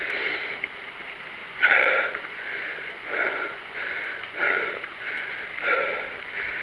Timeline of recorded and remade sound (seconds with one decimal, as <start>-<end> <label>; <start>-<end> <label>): 0.0-1.4 recorded; 1.4-5.4 remade; 5.4-6.6 recorded

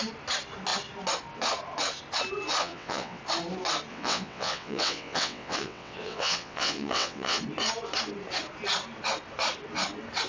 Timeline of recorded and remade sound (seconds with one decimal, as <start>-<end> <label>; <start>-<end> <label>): 0.0-2.6 recorded; 2.6-3.2 remade; 3.2-3.9 recorded; 3.9-7.4 remade; 7.4-10.3 recorded

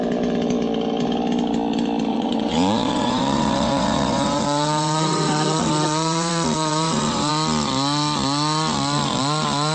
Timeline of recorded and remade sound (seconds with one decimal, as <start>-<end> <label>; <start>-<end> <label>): 0.0-2.1 recorded; 2.1-7.3 remade; 7.3-9.7 recorded

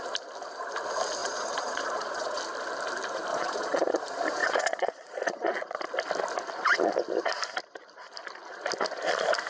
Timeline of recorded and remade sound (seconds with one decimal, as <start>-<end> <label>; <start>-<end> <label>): 0.0-1.2 recorded; 1.2-2.4 remade; 2.4-3.3 recorded; 3.3-4.0 remade; 4.0-4.4 recorded; 4.4-5.8 remade; 5.8-9.5 recorded

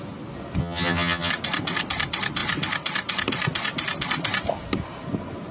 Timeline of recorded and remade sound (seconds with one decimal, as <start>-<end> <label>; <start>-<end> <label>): 0.0-0.6 recorded; 0.6-1.3 remade; 1.3-5.5 recorded

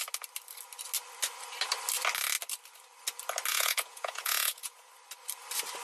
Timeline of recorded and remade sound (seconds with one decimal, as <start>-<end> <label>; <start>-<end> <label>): 0.0-3.5 recorded; 3.5-4.9 remade; 4.9-5.8 recorded

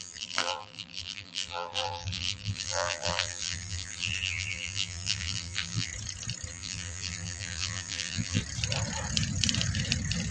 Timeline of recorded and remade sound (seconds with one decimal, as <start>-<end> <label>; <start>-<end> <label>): 0.0-5.9 remade; 5.9-6.5 recorded; 6.5-8.4 remade; 8.4-10.3 recorded